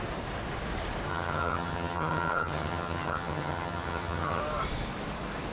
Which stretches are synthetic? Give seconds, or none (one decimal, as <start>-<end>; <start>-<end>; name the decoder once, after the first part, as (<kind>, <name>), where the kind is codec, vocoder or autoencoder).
1.1-4.4 (vocoder, HiFi-GAN)